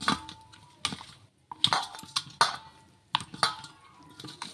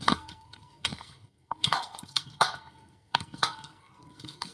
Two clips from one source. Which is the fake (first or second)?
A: second